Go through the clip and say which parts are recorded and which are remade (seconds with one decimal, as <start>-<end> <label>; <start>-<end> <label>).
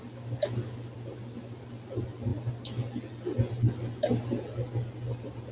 0.0-5.5 recorded